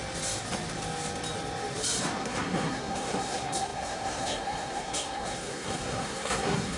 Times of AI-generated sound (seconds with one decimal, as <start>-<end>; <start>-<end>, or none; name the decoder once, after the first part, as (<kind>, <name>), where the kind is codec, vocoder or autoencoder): 2.2-6.8 (codec, SNAC)

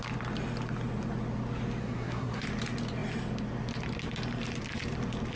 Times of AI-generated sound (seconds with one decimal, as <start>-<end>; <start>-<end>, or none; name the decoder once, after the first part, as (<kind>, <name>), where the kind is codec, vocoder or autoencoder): 1.8-2.4 (codec, SNAC)

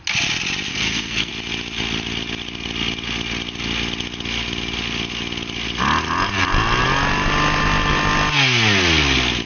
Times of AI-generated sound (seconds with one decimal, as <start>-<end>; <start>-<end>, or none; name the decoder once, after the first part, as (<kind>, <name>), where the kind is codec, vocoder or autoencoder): 0.7-1.3 (codec, SNAC)

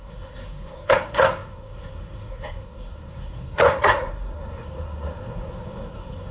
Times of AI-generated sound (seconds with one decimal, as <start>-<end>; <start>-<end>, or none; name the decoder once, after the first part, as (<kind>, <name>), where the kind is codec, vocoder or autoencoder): 0.0-6.3 (codec, SNAC)

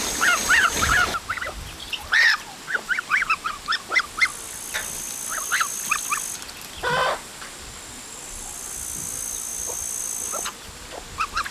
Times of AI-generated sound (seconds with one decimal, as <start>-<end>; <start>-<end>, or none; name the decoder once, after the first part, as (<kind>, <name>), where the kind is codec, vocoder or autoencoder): none

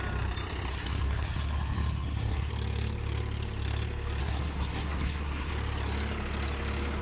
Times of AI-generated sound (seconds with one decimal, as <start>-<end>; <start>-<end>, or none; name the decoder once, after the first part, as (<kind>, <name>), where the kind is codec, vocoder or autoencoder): 0.7-2.5 (codec, SNAC); 4.2-5.5

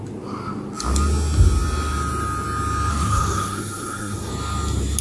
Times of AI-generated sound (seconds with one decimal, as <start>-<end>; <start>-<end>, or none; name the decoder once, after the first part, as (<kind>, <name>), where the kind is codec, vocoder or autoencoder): 2.9-4.3 (codec, SNAC)

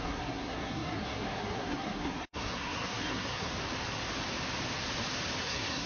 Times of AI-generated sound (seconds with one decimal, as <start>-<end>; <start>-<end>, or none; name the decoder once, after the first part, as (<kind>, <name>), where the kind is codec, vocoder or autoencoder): 0.0-3.5 (codec, SNAC); 5.4-5.9